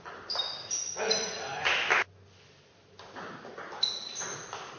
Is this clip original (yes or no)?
yes